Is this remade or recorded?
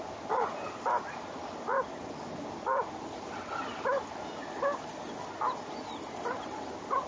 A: recorded